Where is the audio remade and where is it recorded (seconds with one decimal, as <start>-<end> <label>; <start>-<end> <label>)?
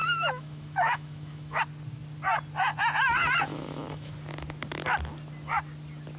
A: 0.0-1.6 remade; 1.6-3.5 recorded; 3.5-4.1 remade; 4.1-6.2 recorded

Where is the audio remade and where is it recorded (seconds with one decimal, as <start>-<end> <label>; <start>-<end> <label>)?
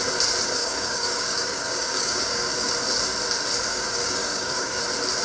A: 0.0-0.6 recorded; 0.6-2.7 remade; 2.7-3.7 recorded; 3.7-4.8 remade; 4.8-5.2 recorded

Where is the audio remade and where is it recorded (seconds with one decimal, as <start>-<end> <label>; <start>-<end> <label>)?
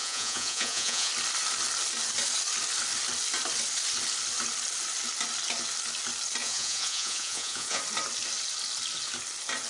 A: 0.0-1.1 remade; 1.1-6.4 recorded; 6.4-7.8 remade; 7.8-9.7 recorded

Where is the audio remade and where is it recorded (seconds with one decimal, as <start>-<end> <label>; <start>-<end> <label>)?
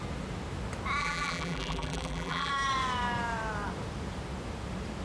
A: 0.0-1.0 recorded; 1.0-2.5 remade; 2.5-5.0 recorded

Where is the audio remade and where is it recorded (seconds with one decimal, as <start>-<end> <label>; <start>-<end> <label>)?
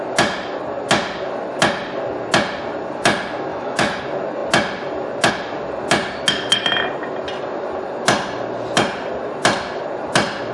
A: 0.0-3.5 recorded; 3.5-4.0 remade; 4.0-10.5 recorded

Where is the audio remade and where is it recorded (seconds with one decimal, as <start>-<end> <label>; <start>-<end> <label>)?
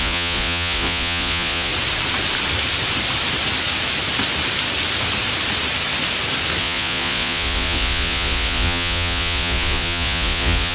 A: 0.0-1.7 remade; 1.7-6.6 recorded; 6.6-10.7 remade